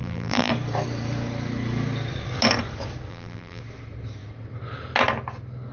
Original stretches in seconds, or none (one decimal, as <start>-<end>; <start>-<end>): 0.5-3.1; 3.6-5.7